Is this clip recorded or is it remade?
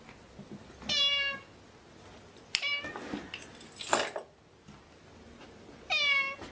recorded